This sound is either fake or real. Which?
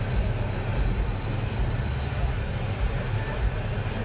real